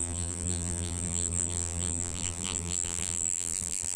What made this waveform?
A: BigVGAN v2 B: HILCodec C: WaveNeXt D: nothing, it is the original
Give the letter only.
A